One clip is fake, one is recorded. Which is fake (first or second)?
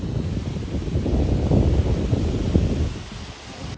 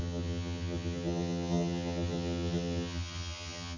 second